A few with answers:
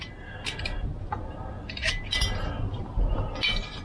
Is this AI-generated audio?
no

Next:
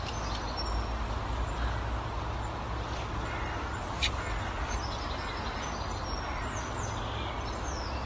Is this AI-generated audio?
no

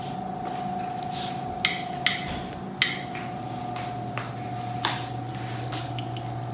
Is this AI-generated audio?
no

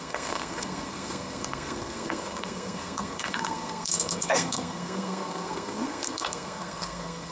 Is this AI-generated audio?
yes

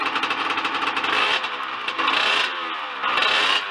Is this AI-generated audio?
no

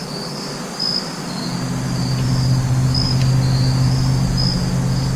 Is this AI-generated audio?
no